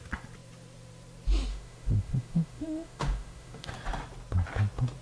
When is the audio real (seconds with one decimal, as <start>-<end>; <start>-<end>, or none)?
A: 0.0-1.5; 3.7-5.0